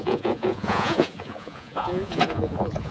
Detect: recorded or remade remade